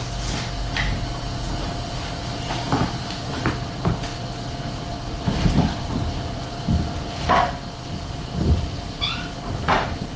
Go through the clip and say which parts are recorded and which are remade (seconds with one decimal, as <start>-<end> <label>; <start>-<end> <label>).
0.0-10.2 recorded